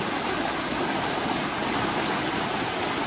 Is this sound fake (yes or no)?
no